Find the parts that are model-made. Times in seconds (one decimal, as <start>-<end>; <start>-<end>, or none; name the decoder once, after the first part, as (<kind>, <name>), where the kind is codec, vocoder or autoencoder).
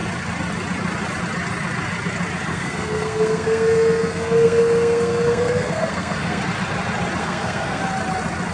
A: 2.5-6.4 (codec, SNAC); 7.2-7.8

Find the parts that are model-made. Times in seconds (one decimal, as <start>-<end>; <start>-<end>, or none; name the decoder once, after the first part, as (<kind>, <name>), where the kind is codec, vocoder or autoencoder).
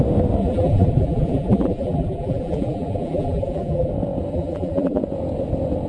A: 0.4-3.9 (vocoder, BigVGAN v2); 4.3-5.0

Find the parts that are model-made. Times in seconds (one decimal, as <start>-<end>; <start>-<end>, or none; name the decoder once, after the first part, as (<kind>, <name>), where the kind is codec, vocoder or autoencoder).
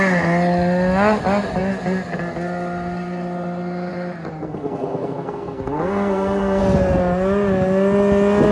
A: 4.4-6.6 (codec, SNAC)